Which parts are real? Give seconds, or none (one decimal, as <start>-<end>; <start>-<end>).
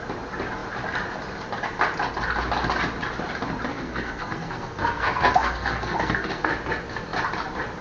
0.0-3.7; 6.5-7.8